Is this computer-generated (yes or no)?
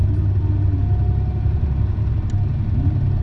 no